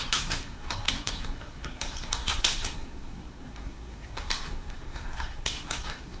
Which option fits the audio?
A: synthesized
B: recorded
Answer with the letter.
A